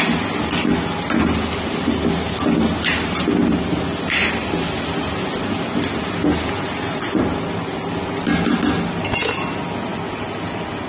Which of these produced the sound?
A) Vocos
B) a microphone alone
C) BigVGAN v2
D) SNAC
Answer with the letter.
B